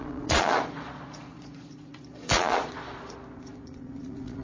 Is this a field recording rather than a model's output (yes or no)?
no